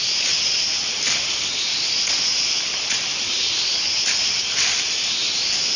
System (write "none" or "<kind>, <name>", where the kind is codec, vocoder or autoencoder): none